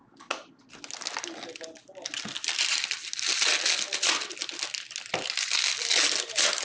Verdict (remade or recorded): recorded